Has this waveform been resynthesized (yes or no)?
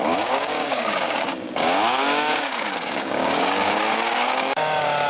yes